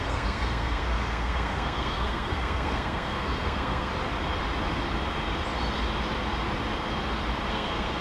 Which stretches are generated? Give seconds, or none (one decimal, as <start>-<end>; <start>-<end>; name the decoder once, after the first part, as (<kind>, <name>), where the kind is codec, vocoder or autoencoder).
0.0-3.9 (codec, SNAC); 7.5-8.0